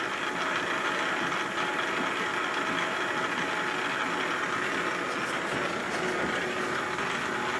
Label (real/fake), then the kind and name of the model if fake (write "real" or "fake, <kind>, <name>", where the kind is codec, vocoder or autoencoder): real